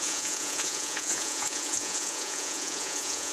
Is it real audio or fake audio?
fake